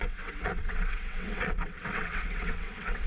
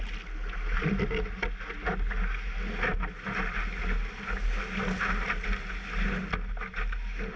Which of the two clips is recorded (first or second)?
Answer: second